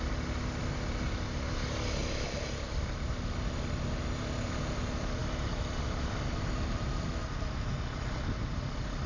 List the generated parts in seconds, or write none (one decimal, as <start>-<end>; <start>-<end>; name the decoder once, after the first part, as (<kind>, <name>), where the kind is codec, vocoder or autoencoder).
2.0-3.1 (vocoder, BigVGAN v2); 5.2-5.8